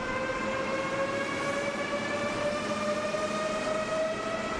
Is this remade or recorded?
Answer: recorded